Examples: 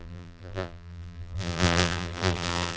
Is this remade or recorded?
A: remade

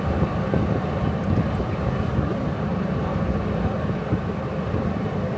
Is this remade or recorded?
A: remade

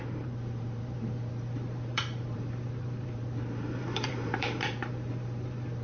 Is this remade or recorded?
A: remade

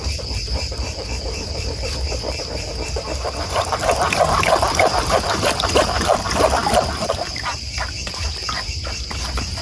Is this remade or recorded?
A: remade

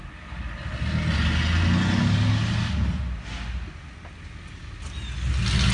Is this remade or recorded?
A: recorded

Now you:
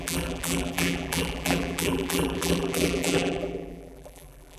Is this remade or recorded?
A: remade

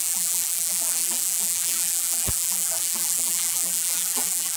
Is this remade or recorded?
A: remade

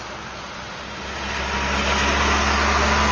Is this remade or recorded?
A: recorded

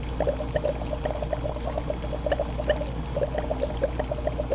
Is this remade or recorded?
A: recorded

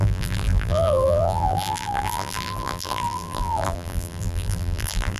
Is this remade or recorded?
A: remade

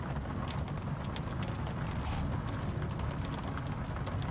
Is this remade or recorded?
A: recorded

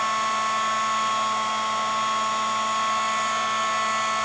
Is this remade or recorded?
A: recorded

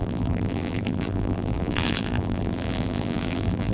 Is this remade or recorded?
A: remade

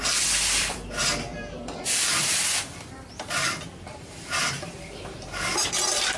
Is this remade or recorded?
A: remade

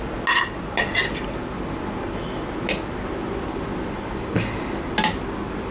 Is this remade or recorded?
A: recorded